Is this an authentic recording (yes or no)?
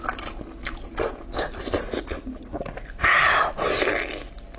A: yes